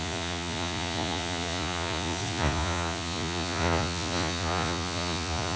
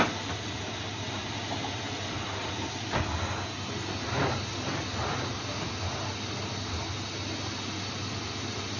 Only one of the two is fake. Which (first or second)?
first